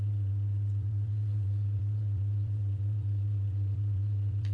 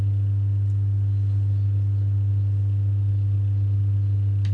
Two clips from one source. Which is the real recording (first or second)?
second